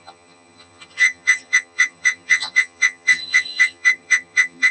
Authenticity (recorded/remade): remade